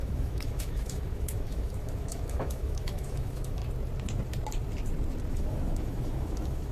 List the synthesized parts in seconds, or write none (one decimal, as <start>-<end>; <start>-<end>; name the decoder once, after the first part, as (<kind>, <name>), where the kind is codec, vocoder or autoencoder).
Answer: 0.0-3.6 (autoencoder, DAC-VAE); 5.3-6.7